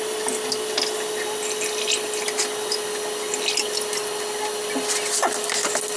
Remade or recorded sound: recorded